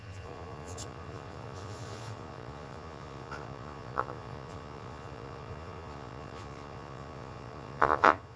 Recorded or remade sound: remade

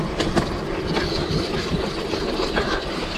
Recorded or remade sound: remade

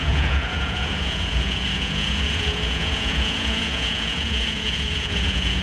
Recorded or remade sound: remade